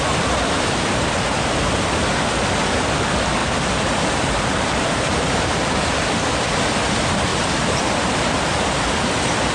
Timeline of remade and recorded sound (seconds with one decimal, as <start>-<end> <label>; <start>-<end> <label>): 0.0-3.4 recorded; 3.4-6.5 remade; 6.5-7.3 recorded; 7.3-7.8 remade; 7.8-9.5 recorded